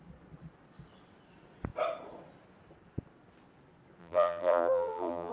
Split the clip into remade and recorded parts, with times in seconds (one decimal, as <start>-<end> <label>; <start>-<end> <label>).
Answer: 0.0-4.0 recorded; 4.0-5.3 remade